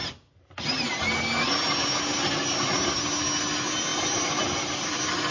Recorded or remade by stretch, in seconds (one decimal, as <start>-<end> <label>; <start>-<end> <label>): 0.0-5.3 recorded

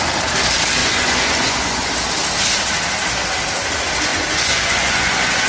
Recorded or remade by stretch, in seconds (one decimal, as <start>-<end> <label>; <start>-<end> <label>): 0.0-0.8 recorded; 0.8-1.9 remade; 1.9-4.1 recorded; 4.1-5.5 remade

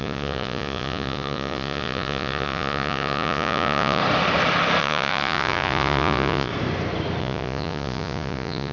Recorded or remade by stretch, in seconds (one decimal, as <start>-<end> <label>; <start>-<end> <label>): 0.0-4.0 remade; 4.0-4.8 recorded; 4.8-6.5 remade; 6.5-7.2 recorded; 7.2-8.7 remade

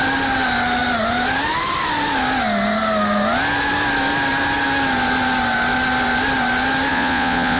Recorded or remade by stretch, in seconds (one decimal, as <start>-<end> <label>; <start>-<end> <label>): 0.0-6.9 recorded; 6.9-7.6 remade

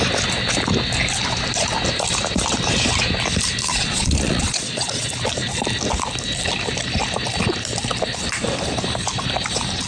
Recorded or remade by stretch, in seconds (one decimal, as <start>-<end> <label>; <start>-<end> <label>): 0.0-3.7 recorded; 3.7-5.1 remade; 5.1-9.9 recorded

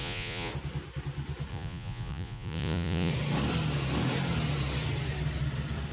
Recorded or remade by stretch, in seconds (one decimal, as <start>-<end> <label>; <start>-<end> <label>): 0.0-0.5 remade; 0.5-1.5 recorded; 1.5-3.1 remade; 3.1-5.9 recorded

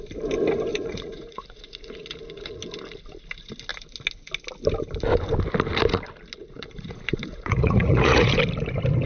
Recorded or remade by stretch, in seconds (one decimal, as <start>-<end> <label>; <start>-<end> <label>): 0.0-0.7 recorded; 0.7-2.6 remade; 2.6-6.4 recorded; 6.4-8.3 remade; 8.3-9.1 recorded